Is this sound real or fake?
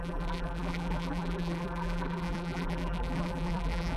fake